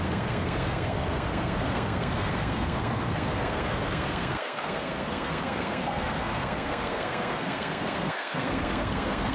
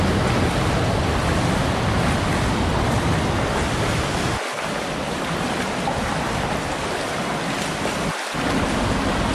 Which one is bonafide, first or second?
second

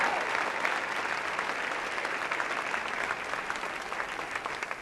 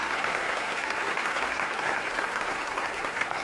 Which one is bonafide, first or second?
first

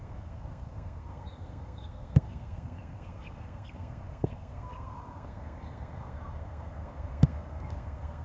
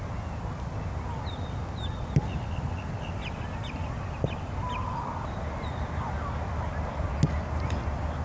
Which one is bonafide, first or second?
second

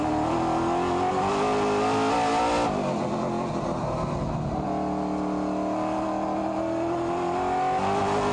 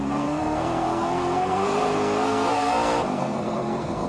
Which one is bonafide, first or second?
first